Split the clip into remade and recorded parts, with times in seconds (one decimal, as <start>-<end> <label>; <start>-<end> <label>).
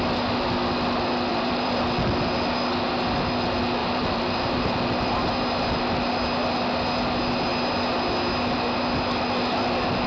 0.0-1.3 recorded; 1.3-1.8 remade; 1.8-3.8 recorded; 3.8-5.1 remade; 5.1-10.1 recorded